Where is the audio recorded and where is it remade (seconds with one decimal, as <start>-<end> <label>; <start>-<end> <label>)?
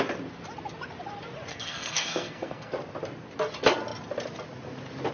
0.0-1.5 recorded; 1.5-2.7 remade; 2.7-5.1 recorded